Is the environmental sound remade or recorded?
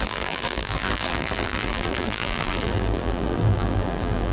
remade